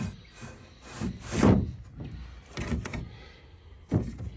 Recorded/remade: recorded